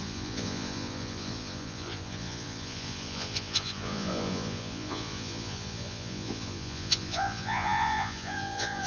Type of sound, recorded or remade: remade